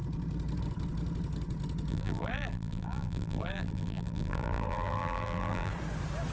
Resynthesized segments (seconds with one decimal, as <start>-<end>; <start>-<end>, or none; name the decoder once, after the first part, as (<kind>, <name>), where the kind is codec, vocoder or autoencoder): 1.9-5.7 (vocoder, BigVGAN v2)